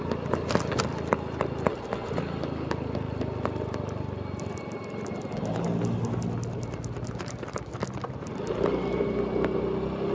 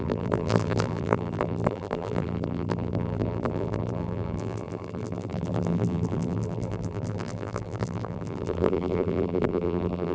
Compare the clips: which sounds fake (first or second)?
second